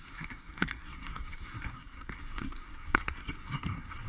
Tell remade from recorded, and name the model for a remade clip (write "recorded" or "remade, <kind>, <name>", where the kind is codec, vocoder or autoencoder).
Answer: remade, codec, SNAC